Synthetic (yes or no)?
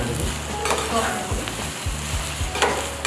no